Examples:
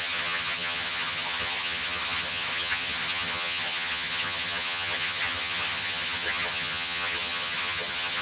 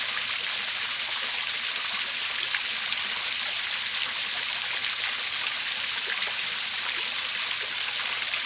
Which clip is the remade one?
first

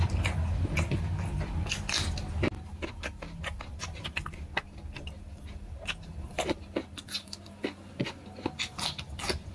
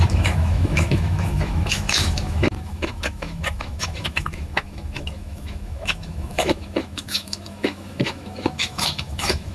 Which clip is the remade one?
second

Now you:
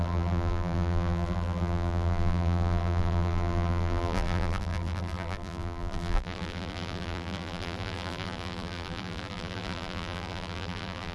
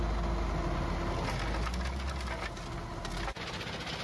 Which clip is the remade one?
first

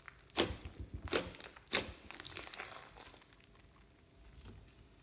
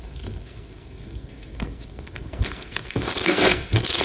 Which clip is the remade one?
second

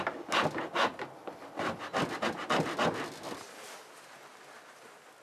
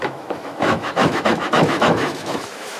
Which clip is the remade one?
second